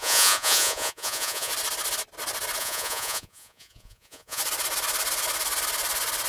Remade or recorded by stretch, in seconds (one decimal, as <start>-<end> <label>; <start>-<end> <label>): 0.0-1.5 remade; 1.5-2.6 recorded; 2.6-4.4 remade; 4.4-6.3 recorded